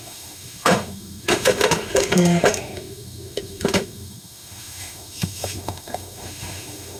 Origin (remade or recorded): remade